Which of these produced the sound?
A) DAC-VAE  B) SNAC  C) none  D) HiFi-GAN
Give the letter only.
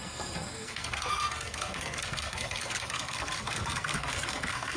B